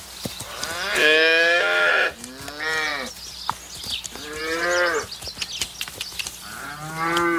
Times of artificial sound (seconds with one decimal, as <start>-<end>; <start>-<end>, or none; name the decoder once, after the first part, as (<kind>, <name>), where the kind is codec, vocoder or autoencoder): 1.0-1.9 (autoencoder, DAC-VAE)